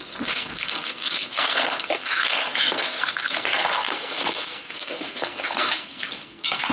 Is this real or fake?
fake